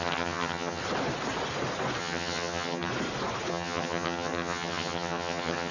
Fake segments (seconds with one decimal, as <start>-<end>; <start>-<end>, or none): 0.0-0.8; 2.0-2.9; 3.5-5.7